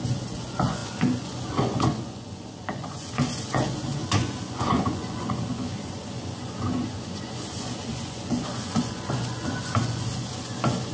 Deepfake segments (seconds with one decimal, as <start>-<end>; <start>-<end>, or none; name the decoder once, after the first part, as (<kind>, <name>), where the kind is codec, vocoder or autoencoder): 0.0-10.9 (vocoder, Vocos)